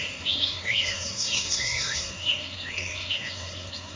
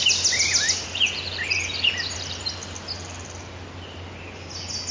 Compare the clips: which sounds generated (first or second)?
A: first